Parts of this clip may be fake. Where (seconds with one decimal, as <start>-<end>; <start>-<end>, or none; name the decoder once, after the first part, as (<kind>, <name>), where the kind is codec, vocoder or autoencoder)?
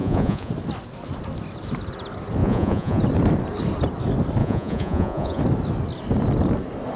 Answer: 0.0-0.5 (vocoder, Vocos); 2.4-3.0; 4.4-5.4